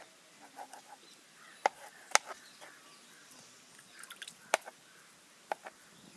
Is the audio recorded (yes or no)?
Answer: yes